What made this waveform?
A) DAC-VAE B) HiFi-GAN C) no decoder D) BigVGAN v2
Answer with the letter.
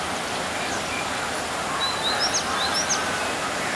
C